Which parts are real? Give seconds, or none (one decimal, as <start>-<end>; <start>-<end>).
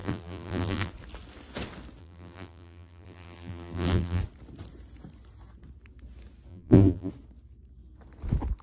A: 0.9-2.0; 4.2-6.5; 7.1-8.6